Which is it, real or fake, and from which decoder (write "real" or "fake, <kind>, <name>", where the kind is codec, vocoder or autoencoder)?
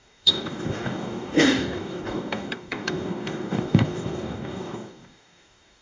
fake, codec, DAC